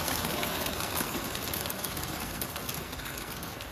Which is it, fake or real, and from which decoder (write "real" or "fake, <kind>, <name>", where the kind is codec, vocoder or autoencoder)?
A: fake, codec, SNAC